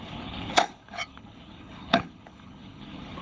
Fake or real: fake